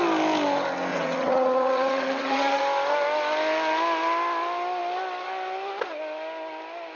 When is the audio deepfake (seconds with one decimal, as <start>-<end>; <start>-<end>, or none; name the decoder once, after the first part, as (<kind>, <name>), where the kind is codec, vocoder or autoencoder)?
0.9-2.6 (vocoder, WaveNeXt)